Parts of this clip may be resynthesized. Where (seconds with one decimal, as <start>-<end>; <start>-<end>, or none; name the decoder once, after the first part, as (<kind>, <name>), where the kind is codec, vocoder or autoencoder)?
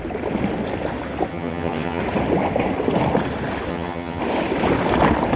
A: 1.3-2.0 (vocoder, HiFi-GAN); 3.7-4.2